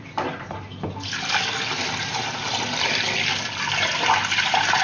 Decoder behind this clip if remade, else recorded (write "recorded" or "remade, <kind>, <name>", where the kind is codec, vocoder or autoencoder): recorded